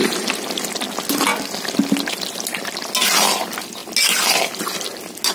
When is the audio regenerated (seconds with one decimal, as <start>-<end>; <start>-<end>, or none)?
none